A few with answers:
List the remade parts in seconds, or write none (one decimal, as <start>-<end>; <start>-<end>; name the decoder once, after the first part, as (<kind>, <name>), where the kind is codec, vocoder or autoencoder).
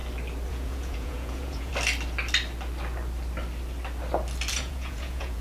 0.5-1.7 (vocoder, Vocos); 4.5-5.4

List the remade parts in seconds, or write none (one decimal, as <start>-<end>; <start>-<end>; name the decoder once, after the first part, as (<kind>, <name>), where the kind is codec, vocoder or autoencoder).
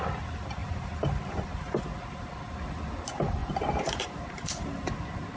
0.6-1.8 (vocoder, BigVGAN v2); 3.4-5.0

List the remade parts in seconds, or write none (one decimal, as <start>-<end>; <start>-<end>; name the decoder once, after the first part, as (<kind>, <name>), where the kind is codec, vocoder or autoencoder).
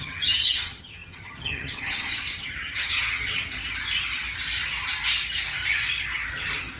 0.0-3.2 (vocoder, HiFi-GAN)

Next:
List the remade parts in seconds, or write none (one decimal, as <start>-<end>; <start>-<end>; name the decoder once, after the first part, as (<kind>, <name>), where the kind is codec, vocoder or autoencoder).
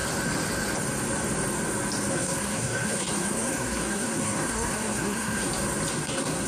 2.1-5.5 (codec, SNAC); 5.9-6.5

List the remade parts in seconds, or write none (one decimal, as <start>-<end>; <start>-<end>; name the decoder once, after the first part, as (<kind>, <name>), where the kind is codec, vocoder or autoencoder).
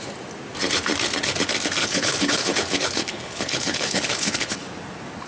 1.8-4.5 (codec, HILCodec)